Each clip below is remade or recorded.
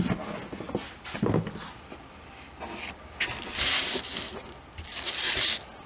recorded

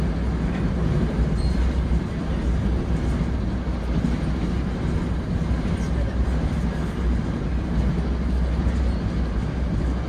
recorded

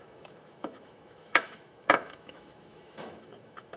remade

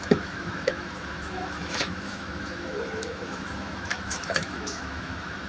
remade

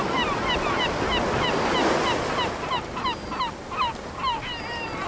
recorded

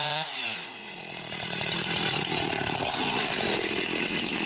remade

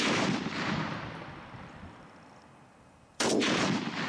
remade